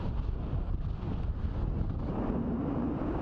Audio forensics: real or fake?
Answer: real